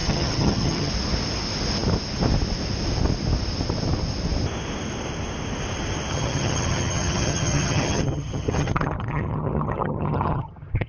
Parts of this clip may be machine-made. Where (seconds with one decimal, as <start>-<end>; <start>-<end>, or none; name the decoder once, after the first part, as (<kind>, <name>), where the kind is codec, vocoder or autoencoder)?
0.0-0.9 (vocoder, HiFi-GAN); 6.1-10.9